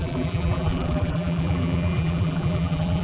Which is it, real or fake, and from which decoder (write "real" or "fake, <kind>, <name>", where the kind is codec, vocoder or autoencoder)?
fake, vocoder, BigVGAN v2